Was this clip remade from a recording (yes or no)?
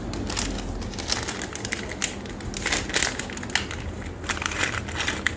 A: no